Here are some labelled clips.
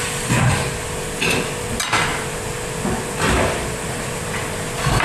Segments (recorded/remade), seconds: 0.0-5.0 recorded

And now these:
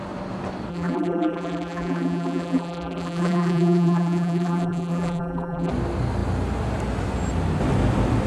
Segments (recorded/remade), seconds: 0.0-0.7 recorded; 0.7-5.7 remade; 5.7-8.3 recorded

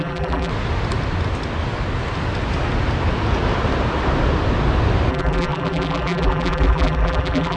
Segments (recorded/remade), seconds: 0.0-0.5 remade; 0.5-5.1 recorded; 5.1-7.6 remade

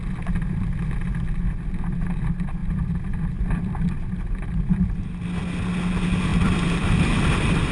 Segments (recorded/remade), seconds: 0.0-2.6 recorded; 2.6-4.1 remade; 4.1-6.3 recorded; 6.3-7.2 remade; 7.2-7.7 recorded

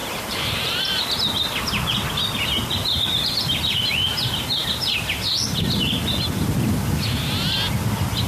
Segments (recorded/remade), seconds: 0.0-1.0 remade; 1.0-8.3 recorded

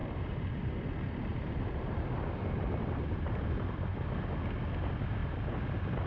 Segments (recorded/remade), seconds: 0.0-0.9 remade; 0.9-1.3 recorded; 1.3-4.1 remade; 4.1-6.1 recorded